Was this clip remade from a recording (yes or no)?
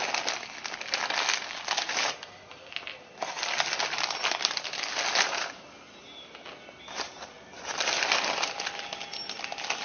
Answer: no